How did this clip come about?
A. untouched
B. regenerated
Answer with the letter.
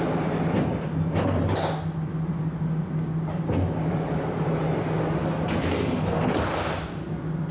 A